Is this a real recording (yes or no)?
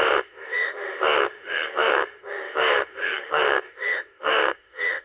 no